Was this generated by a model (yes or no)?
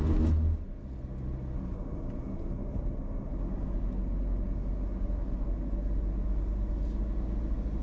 no